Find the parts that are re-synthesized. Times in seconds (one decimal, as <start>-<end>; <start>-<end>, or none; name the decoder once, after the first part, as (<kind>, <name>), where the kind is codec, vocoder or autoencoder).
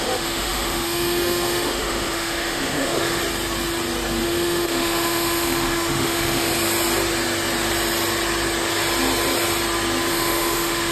0.0-3.2 (autoencoder, DAC-VAE); 4.2-6.5; 10.1-10.9